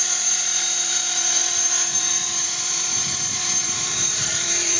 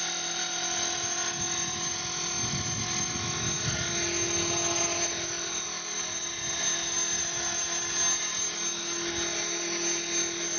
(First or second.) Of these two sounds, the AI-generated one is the first